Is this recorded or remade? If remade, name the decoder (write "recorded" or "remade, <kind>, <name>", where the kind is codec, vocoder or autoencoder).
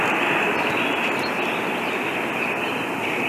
recorded